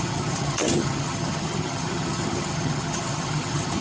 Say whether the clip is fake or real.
fake